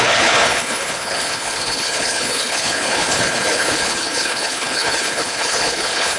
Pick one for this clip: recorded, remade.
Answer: remade